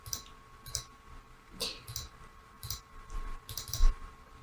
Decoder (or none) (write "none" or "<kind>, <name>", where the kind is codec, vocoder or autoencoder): vocoder, BigVGAN v2